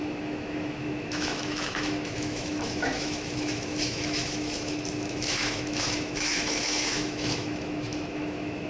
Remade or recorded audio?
remade